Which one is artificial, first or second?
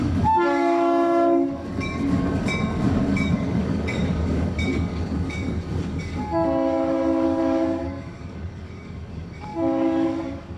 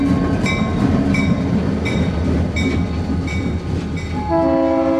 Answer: first